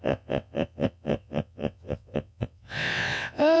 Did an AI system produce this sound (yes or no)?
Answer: yes